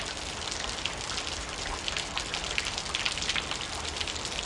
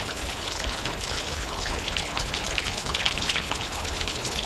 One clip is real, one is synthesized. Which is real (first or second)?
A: first